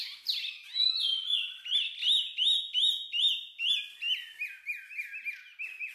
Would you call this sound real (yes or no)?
yes